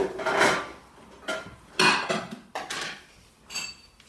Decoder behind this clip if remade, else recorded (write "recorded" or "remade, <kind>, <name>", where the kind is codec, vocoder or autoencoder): recorded